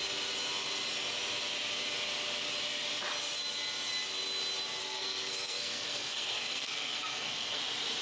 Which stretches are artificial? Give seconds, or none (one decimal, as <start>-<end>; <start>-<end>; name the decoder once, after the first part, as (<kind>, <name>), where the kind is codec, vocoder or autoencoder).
4.8-7.6 (codec, SNAC)